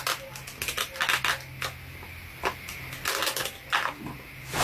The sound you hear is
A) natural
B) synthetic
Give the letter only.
A